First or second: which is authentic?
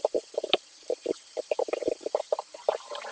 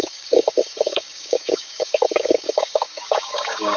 first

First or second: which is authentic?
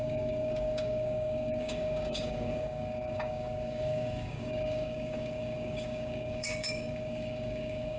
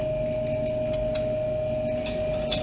second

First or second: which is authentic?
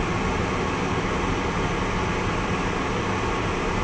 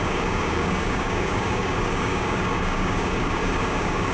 first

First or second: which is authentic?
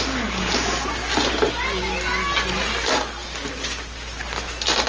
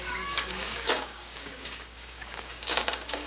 first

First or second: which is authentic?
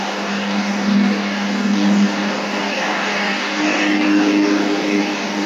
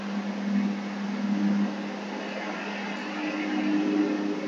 second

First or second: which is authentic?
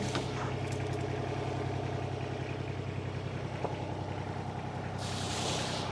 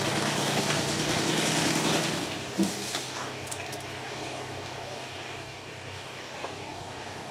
first